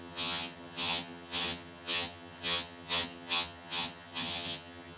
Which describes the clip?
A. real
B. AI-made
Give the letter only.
B